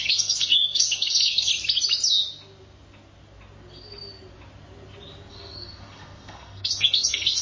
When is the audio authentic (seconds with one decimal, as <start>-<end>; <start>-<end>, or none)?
1.5-5.3